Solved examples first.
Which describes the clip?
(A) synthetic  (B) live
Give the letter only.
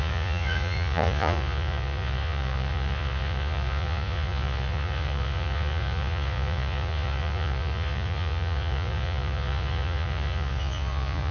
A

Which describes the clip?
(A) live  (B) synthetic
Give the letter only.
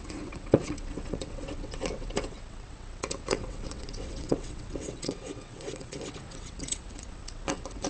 B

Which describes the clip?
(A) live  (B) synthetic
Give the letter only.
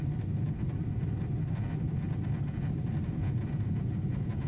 A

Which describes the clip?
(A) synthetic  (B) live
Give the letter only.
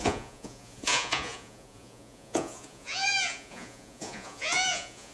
A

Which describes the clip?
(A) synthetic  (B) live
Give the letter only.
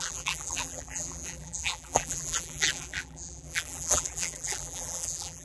A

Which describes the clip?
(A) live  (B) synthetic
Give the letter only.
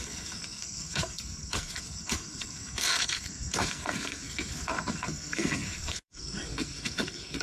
B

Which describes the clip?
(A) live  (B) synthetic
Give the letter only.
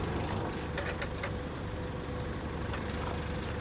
A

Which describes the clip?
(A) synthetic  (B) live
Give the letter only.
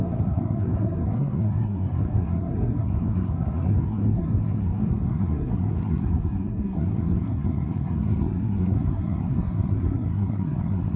A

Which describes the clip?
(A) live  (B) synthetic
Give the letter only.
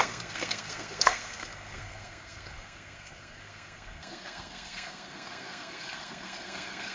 B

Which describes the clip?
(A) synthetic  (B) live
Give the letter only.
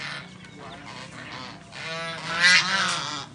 B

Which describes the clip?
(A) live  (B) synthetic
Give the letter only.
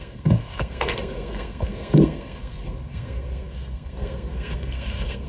B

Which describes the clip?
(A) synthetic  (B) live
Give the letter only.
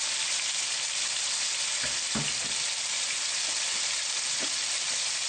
B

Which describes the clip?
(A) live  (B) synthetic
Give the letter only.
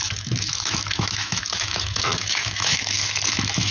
B